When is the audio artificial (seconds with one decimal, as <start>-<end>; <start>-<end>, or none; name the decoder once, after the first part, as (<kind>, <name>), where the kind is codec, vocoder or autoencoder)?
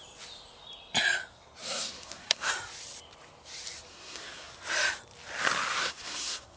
1.6-2.5 (codec, SNAC); 3.9-4.5; 5.8-6.6